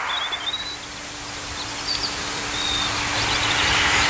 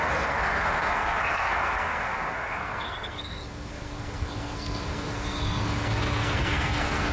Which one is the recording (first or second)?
first